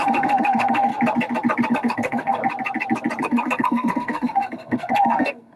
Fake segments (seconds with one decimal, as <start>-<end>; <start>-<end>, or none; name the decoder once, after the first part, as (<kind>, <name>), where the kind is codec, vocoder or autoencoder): 0.0-0.9 (codec, SNAC); 1.7-2.4; 3.2-5.6